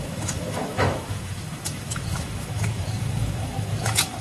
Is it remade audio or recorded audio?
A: remade